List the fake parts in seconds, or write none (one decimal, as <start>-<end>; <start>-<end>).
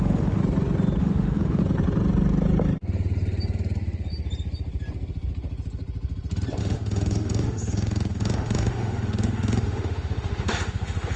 0.0-0.4; 1.0-1.6; 6.6-11.2